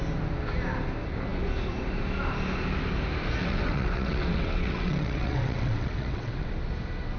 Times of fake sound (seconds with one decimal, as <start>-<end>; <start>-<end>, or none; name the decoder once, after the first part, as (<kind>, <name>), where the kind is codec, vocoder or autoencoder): 3.4-6.5 (vocoder, WaveNeXt)